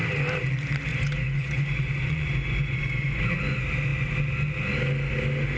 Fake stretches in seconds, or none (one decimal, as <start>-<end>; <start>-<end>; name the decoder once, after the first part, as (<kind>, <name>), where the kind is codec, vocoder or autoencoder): 0.9-3.3 (vocoder, Vocos)